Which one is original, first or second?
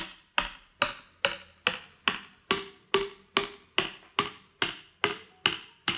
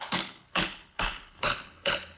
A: first